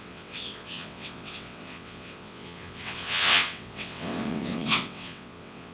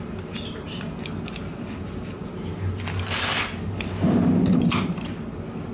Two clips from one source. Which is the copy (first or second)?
first